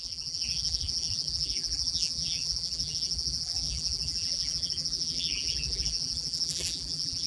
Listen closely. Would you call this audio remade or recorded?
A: remade